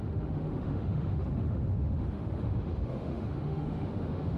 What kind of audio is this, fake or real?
fake